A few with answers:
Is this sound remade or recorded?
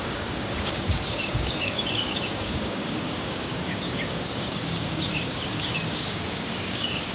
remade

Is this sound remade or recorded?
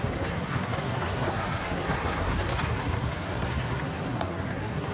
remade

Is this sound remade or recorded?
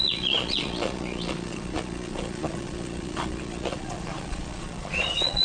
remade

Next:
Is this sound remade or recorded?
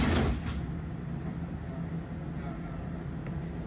recorded